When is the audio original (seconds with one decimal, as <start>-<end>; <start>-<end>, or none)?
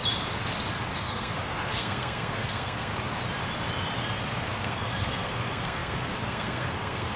0.0-0.9; 2.9-4.6